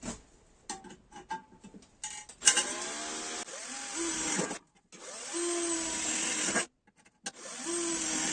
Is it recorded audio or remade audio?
recorded